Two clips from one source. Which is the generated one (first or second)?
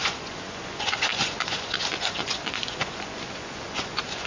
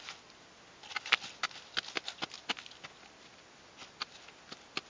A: first